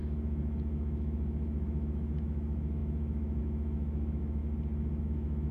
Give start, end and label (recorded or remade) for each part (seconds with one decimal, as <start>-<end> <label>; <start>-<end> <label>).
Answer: 0.0-4.4 remade; 4.4-5.0 recorded; 5.0-5.5 remade